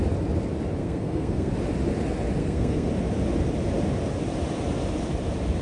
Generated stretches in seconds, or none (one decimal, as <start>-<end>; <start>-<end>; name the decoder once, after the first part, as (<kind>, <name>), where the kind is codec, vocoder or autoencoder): 0.8-1.5 (codec, SNAC); 2.4-2.9